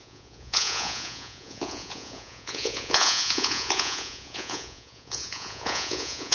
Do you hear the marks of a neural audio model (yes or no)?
yes